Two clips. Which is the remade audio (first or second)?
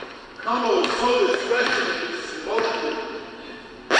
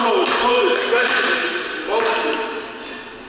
first